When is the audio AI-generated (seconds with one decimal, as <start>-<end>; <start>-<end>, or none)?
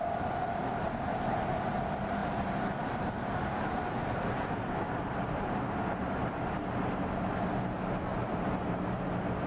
2.2-6.3; 8.1-8.8